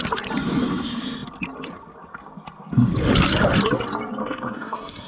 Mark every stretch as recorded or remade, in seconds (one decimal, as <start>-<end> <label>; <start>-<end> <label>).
0.0-4.2 recorded; 4.2-5.1 remade